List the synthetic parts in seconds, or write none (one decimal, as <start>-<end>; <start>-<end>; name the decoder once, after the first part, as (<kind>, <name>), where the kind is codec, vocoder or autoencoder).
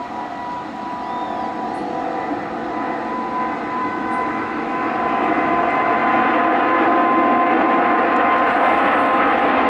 3.8-4.9 (autoencoder, DAC-VAE)